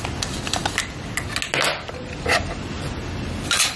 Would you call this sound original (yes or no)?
yes